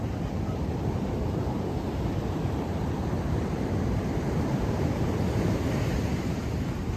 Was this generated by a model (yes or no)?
yes